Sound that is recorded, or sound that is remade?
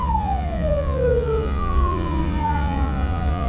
remade